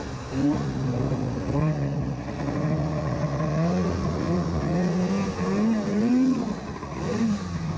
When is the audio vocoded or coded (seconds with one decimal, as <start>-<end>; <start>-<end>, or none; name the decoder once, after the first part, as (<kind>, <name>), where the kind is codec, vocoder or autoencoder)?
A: 0.4-5.1 (vocoder, Vocos); 5.9-7.2